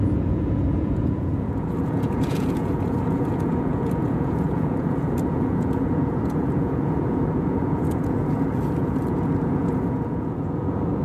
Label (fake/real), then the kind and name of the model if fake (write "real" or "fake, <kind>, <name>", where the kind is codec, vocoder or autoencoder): fake, vocoder, Vocos